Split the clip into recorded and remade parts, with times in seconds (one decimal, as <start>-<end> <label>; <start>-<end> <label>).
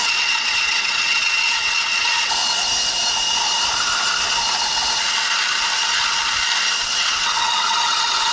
0.0-2.4 remade; 2.4-6.8 recorded; 6.8-8.3 remade